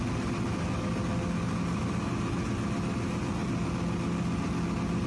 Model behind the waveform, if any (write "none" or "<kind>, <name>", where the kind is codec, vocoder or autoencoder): none